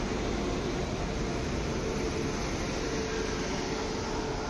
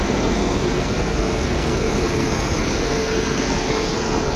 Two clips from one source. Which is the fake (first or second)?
second